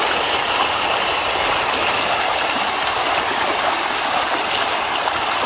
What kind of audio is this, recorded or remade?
recorded